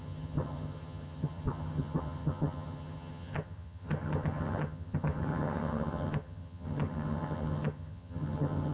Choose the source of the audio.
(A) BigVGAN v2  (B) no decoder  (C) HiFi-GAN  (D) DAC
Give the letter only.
C